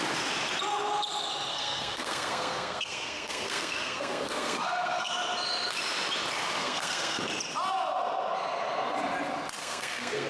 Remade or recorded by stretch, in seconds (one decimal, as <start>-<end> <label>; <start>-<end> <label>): 0.0-1.5 recorded; 1.5-5.1 remade; 5.1-6.6 recorded; 6.6-7.2 remade; 7.2-9.6 recorded; 9.6-10.3 remade